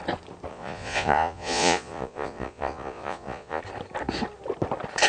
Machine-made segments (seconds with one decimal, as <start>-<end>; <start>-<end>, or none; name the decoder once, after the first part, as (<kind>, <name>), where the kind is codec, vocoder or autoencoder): 0.5-3.6 (vocoder, Vocos)